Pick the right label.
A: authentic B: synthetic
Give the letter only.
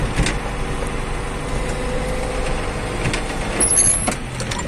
A